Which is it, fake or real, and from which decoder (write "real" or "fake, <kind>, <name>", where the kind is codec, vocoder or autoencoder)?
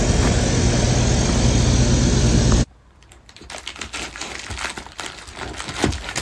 real